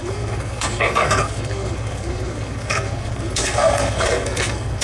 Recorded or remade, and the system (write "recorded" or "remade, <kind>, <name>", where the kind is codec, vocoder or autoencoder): remade, codec, SNAC